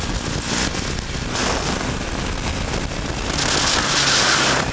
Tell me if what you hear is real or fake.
real